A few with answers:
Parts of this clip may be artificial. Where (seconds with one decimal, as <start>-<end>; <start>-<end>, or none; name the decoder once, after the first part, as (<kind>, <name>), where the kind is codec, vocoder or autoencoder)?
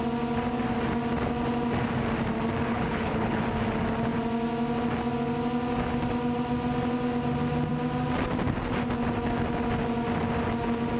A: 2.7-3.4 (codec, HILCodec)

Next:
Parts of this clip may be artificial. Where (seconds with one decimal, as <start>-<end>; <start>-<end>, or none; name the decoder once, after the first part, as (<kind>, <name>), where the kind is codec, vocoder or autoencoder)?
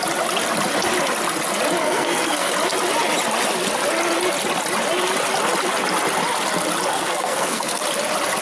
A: 1.8-2.5 (codec, SNAC); 6.9-7.8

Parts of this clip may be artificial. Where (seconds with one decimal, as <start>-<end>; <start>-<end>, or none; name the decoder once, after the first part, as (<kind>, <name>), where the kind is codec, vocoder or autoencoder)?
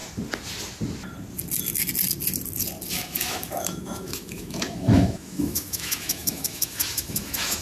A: 2.9-7.6 (autoencoder, DAC-VAE)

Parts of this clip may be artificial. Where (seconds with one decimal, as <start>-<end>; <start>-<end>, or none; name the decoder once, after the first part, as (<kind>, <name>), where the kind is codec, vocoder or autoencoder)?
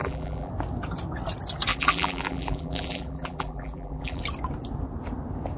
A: 0.0-0.5 (vocoder, BigVGAN v2); 1.7-4.2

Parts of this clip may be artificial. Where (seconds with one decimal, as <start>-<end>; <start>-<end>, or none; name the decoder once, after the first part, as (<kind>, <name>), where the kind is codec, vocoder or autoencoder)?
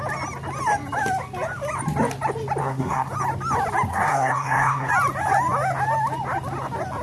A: 2.6-3.1 (codec, SNAC); 3.9-4.9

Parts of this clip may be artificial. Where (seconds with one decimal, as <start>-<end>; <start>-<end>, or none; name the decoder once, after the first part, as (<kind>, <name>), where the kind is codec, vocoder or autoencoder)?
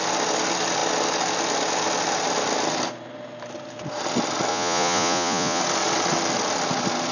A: 4.5-5.6 (vocoder, Vocos)